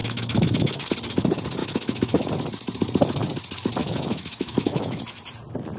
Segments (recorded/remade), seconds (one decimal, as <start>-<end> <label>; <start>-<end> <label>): 0.0-0.9 remade; 0.9-1.6 recorded; 1.6-2.3 remade; 2.3-3.8 recorded; 3.8-5.0 remade; 5.0-5.8 recorded